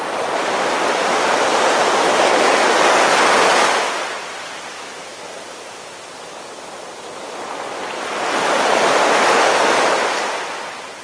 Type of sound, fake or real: real